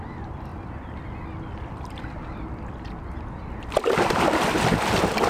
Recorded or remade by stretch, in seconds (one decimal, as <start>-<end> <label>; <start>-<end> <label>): 0.0-5.3 recorded